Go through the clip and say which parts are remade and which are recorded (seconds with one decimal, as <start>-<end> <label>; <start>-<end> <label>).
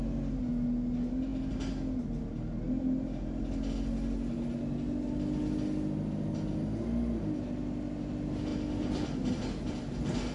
0.0-10.3 recorded